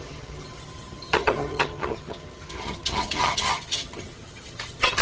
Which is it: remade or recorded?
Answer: remade